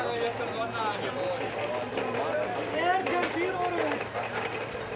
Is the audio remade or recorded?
recorded